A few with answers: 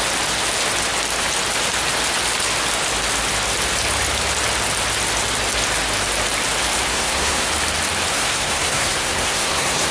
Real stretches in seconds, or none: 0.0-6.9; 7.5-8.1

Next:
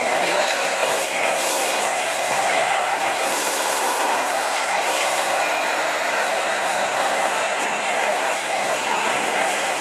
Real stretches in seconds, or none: 5.4-6.1

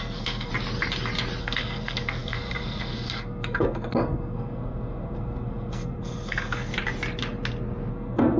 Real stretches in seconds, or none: 0.5-1.4; 6.7-7.9

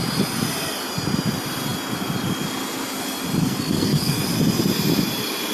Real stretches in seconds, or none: 0.0-3.4; 4.2-5.5